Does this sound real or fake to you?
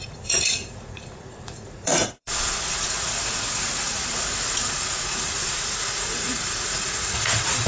fake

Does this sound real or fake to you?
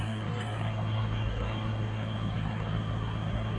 fake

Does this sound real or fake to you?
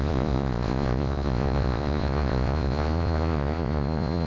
fake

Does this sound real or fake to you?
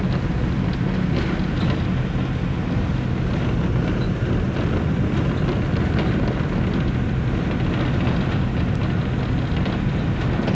real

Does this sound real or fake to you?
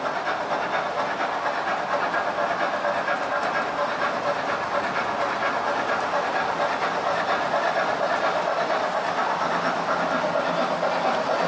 real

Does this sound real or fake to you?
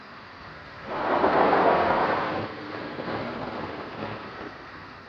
fake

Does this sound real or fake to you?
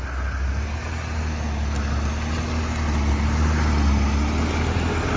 real